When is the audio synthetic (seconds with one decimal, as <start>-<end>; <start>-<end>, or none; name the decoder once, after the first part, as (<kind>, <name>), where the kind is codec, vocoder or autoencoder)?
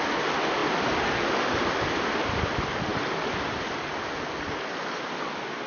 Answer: none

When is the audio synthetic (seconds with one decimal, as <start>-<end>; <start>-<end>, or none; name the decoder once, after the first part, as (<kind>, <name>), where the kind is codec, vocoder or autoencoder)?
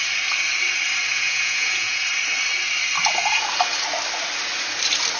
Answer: 1.1-2.0 (vocoder, Vocos)